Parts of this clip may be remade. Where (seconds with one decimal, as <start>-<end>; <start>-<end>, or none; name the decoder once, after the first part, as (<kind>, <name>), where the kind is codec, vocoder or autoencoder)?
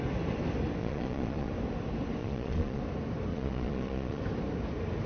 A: 0.8-1.5 (vocoder, Vocos); 2.2-2.8; 3.3-4.2